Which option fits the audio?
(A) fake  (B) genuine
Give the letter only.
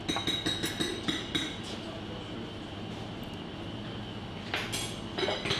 B